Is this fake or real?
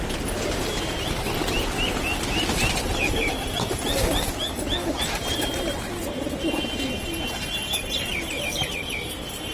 real